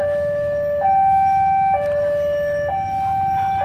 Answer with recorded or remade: recorded